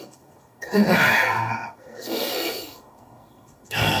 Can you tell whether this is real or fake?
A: fake